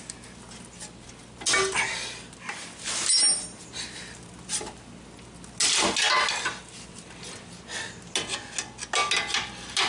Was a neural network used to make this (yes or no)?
no